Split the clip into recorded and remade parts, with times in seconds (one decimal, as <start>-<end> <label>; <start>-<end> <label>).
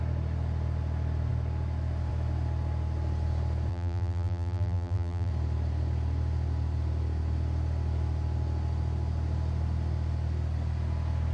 0.0-3.7 recorded; 3.7-5.3 remade; 5.3-11.3 recorded